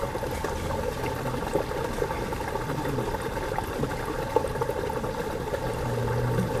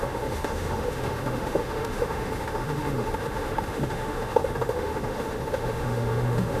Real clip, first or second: first